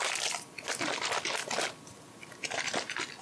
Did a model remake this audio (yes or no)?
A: no